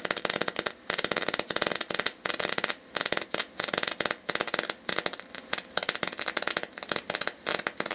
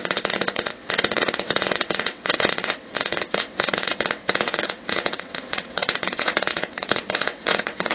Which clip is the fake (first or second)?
second